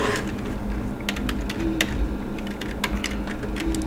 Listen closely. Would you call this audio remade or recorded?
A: recorded